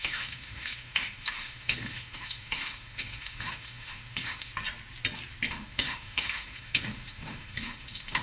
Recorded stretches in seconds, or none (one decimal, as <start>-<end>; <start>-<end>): 4.5-5.5